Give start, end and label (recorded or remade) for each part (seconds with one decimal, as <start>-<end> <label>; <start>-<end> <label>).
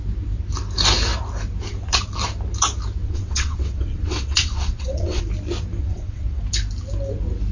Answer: 0.0-3.0 recorded; 3.0-5.2 remade; 5.2-5.8 recorded; 5.8-6.4 remade; 6.4-7.5 recorded